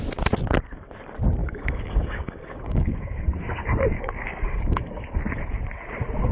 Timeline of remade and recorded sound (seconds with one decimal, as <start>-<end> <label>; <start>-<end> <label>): 0.0-1.4 recorded; 1.4-5.2 remade; 5.2-6.3 recorded